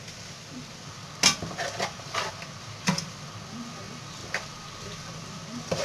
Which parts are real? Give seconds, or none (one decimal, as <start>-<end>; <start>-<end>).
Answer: 0.0-5.8